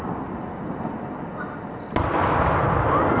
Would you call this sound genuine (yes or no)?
yes